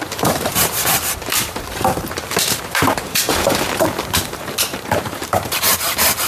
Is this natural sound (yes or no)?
no